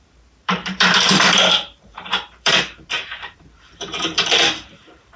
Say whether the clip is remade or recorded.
remade